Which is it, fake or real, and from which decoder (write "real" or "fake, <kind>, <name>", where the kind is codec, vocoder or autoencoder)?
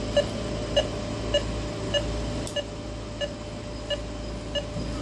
real